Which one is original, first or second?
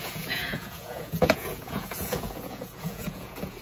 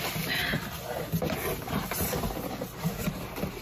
second